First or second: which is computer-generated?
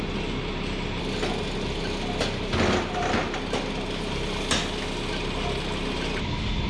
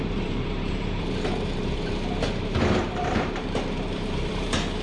second